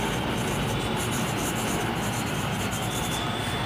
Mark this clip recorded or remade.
recorded